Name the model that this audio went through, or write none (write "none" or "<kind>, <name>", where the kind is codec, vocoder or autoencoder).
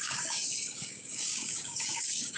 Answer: codec, DAC